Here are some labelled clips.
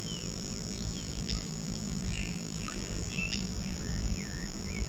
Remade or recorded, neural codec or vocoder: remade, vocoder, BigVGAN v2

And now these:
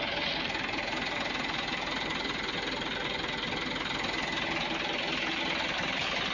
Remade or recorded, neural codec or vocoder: recorded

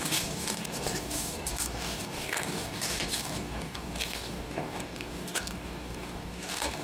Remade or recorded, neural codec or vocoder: remade, codec, DAC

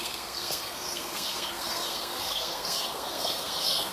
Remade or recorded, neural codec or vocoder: remade, codec, SNAC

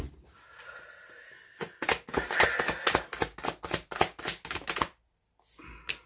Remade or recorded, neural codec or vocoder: recorded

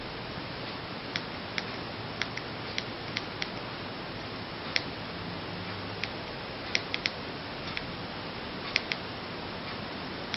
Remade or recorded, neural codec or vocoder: recorded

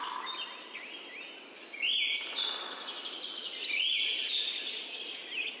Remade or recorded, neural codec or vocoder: recorded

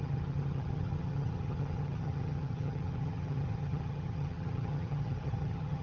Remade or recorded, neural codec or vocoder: remade, vocoder, HiFi-GAN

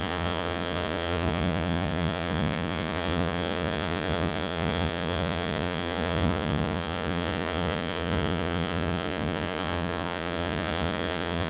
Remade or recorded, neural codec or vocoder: remade, vocoder, Vocos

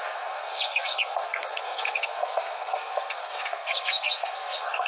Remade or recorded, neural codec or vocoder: remade, codec, SNAC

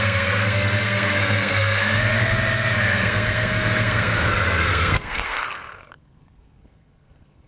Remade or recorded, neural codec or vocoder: remade, codec, SNAC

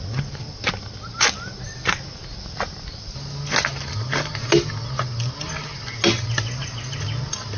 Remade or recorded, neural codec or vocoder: recorded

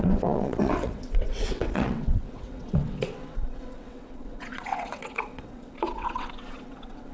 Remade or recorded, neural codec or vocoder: remade, vocoder, WaveNeXt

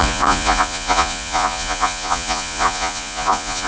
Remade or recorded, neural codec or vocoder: remade, vocoder, Vocos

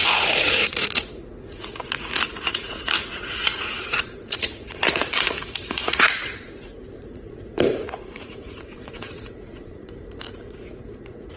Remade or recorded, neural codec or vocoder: remade, vocoder, Vocos